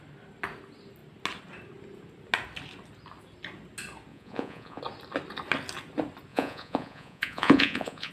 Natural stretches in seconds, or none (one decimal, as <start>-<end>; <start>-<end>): 0.0-4.1; 4.8-6.3